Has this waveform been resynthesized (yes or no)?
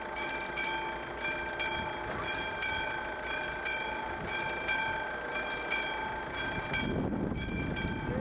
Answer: no